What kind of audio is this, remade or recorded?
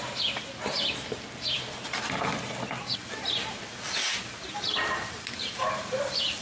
recorded